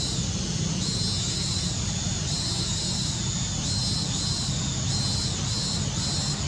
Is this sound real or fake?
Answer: real